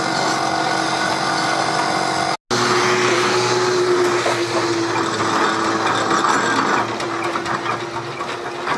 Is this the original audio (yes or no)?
yes